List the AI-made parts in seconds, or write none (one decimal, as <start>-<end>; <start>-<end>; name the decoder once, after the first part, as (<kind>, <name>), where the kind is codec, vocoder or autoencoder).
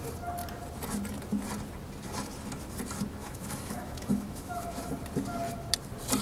3.2-4.9 (autoencoder, DAC-VAE)